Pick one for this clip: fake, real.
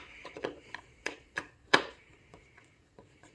fake